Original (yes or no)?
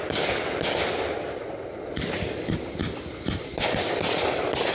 yes